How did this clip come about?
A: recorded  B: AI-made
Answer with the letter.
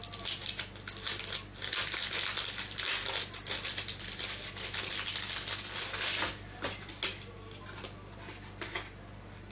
A